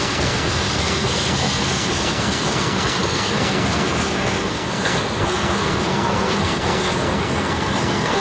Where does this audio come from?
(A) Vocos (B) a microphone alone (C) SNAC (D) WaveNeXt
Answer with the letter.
C